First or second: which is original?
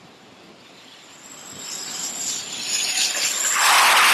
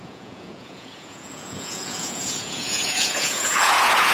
first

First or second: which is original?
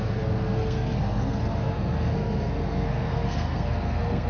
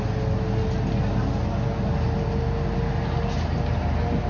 second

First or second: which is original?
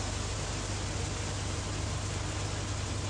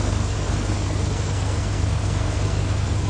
first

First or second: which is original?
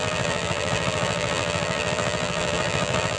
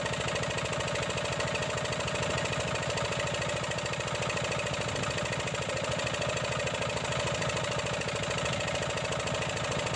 second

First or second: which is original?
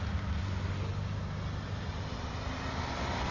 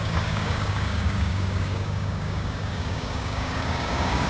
first